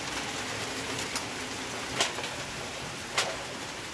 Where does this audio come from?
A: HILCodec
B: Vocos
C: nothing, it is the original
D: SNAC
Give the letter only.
C